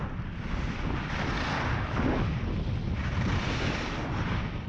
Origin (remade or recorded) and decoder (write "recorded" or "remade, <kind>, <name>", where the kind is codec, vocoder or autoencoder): recorded